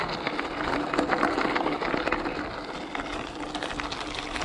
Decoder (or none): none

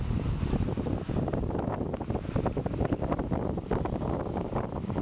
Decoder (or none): none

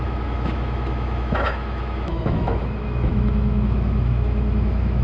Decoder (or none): autoencoder, DAC-VAE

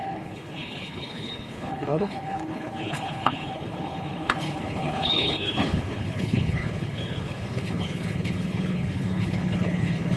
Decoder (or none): codec, HILCodec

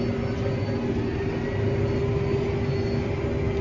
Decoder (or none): none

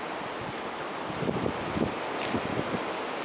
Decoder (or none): none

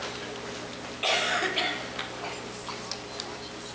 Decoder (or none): none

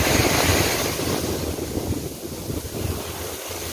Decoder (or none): none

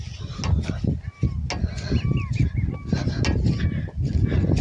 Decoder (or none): none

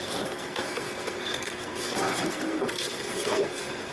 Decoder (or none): codec, SNAC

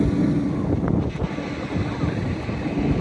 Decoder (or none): none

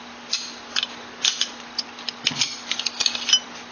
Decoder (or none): none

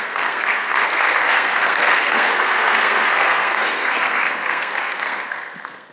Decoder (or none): codec, SNAC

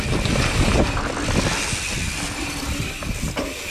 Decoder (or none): none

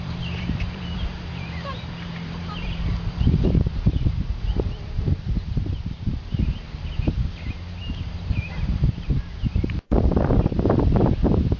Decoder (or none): vocoder, BigVGAN v2